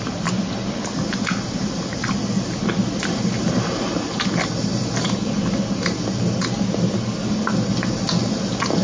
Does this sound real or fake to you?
real